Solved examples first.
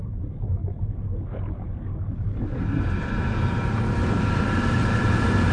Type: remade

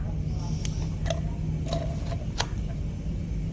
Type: recorded